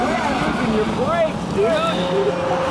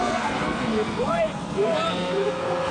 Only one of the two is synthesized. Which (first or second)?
second